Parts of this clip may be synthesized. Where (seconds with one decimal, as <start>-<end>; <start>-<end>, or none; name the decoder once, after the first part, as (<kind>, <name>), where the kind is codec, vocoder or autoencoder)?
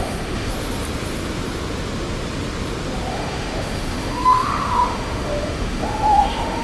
0.0-0.5 (autoencoder, DAC-VAE); 3.1-6.6